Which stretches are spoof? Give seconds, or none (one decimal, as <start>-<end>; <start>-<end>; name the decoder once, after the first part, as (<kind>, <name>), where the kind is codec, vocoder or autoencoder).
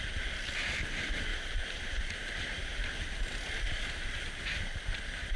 none